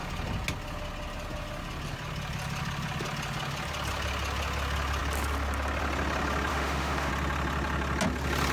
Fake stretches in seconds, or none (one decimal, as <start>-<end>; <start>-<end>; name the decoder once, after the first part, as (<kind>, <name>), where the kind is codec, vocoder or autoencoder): 6.5-7.1 (autoencoder, DAC-VAE)